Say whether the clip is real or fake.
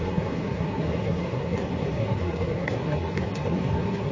fake